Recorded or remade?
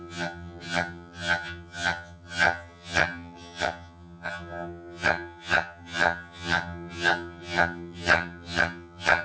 remade